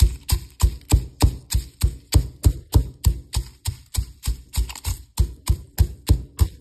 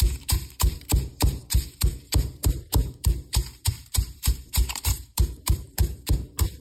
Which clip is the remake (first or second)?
second